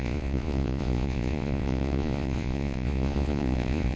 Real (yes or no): no